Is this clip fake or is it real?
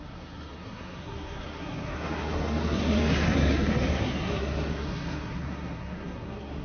fake